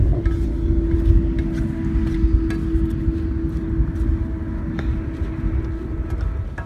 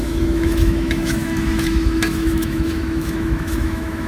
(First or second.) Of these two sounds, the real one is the first